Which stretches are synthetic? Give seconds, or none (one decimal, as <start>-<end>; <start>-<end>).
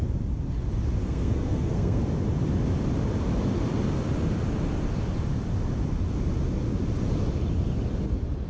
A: 1.0-2.0